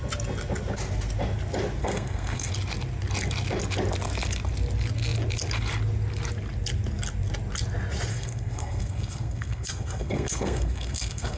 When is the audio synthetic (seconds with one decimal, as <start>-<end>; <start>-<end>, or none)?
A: 1.8-2.5; 8.1-11.4